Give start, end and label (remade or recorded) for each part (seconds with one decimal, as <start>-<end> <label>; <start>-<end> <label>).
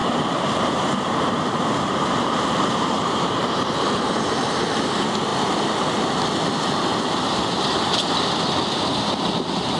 0.0-4.5 remade; 4.5-9.8 recorded